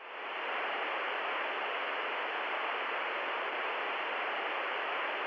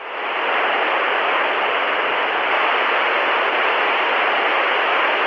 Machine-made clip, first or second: first